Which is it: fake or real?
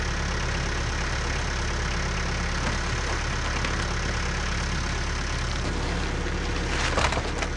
real